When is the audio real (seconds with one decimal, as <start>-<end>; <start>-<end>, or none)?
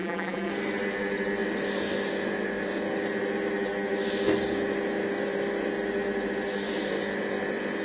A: 0.5-7.8